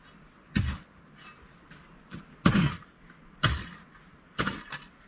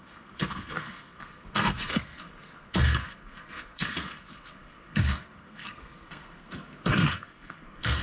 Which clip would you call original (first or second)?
first